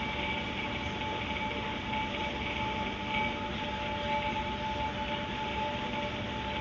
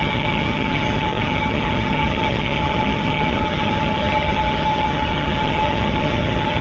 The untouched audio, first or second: first